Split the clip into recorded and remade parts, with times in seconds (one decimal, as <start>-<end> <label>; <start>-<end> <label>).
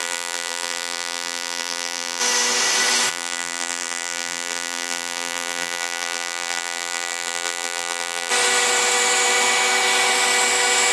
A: 0.0-2.2 remade; 2.2-3.1 recorded; 3.1-8.3 remade; 8.3-10.9 recorded